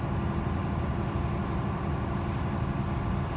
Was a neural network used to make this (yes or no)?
no